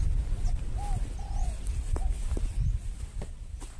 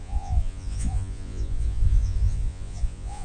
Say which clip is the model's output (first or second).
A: second